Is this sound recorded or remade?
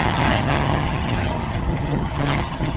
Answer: remade